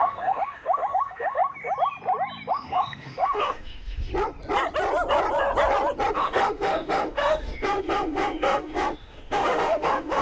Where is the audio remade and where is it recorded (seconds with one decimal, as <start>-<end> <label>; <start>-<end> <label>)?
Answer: 0.0-1.4 remade; 1.4-2.5 recorded; 2.5-4.1 remade; 4.1-6.1 recorded; 6.1-10.2 remade